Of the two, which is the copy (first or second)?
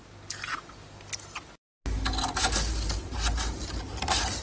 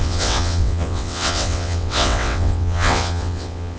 second